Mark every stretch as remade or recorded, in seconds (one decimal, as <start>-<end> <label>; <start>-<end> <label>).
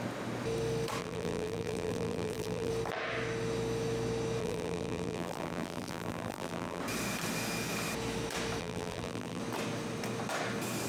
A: 0.0-1.0 recorded; 1.0-2.7 remade; 2.7-4.4 recorded; 4.4-6.8 remade; 6.8-8.6 recorded; 8.6-9.4 remade; 9.4-10.9 recorded